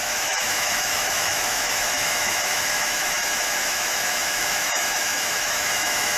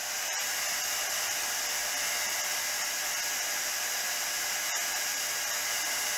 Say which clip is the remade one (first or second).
first